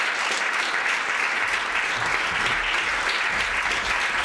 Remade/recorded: recorded